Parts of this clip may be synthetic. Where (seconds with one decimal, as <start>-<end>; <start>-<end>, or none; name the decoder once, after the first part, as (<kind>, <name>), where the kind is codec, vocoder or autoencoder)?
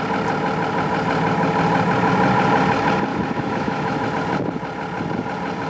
3.1-4.1 (autoencoder, DAC-VAE)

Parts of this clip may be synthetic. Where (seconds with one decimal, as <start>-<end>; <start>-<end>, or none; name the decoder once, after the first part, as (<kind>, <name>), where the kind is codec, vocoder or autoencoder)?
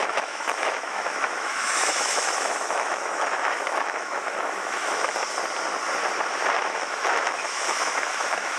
0.0-5.1 (autoencoder, DAC-VAE); 6.6-8.6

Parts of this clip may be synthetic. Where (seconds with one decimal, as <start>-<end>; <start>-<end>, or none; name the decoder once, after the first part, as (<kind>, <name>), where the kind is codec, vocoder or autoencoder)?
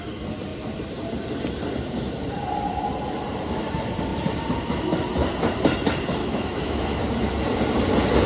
6.2-7.0 (autoencoder, DAC-VAE)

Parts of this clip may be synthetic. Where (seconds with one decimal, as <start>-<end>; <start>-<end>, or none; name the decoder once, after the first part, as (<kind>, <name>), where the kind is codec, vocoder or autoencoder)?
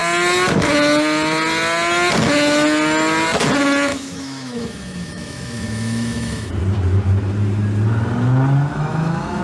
3.9-6.5 (autoencoder, DAC-VAE); 8.7-9.4